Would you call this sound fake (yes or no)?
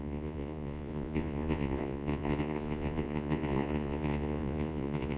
yes